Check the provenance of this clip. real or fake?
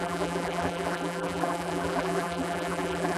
fake